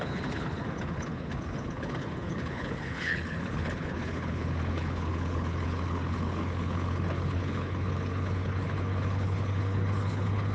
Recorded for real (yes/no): no